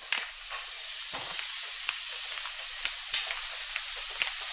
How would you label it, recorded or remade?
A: recorded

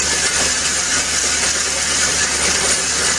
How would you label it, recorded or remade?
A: recorded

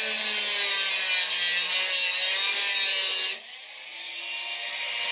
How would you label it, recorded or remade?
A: recorded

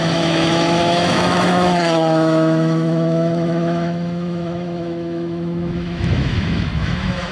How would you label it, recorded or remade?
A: remade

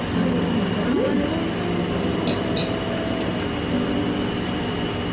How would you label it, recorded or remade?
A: recorded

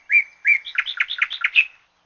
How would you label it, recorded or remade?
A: recorded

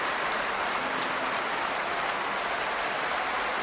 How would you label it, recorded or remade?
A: recorded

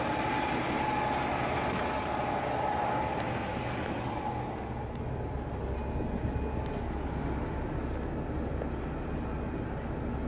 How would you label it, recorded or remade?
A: recorded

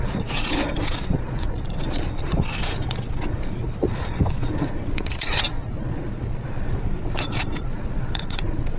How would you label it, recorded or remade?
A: remade